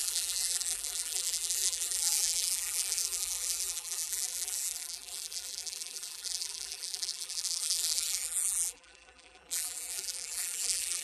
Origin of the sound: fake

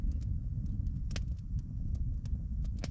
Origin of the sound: real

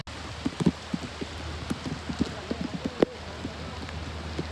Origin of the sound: real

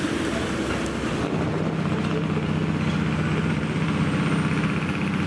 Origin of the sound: real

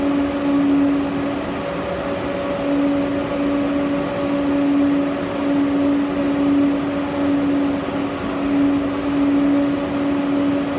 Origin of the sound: real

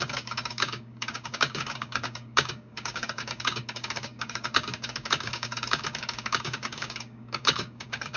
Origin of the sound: fake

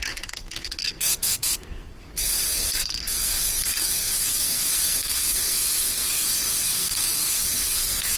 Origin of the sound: fake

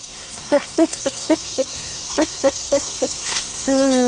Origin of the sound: fake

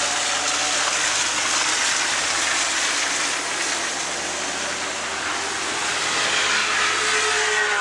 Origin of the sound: real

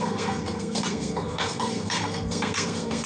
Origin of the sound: fake